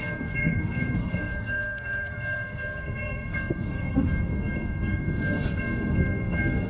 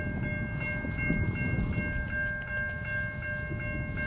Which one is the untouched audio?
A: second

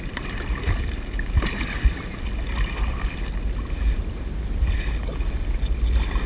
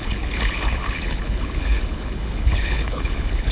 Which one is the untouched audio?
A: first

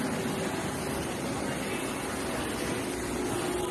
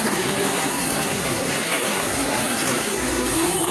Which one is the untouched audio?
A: first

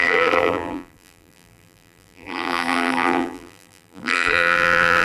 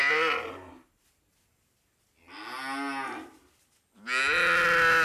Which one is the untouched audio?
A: second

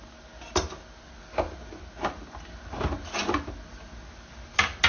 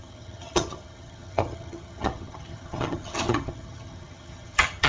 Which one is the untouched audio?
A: first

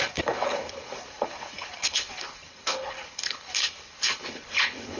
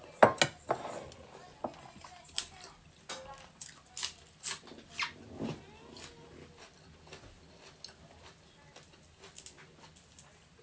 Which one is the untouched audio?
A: second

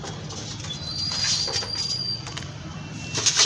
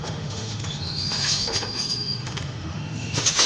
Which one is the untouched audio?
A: first